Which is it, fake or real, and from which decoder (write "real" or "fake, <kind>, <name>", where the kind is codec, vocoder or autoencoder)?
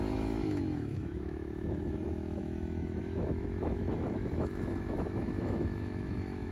fake, autoencoder, DAC-VAE